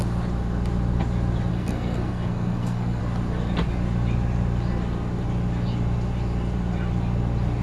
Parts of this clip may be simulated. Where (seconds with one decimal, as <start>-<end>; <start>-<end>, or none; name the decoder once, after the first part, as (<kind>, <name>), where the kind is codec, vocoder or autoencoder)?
1.5-3.0 (codec, SNAC)